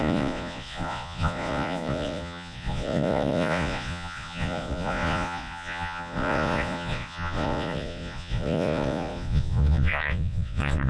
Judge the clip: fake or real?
fake